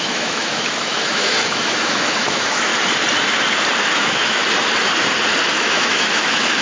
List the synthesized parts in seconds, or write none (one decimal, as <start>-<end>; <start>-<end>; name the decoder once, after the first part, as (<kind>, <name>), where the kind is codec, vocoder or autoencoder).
0.0-2.7 (autoencoder, DAC-VAE); 3.8-4.4; 5.5-6.6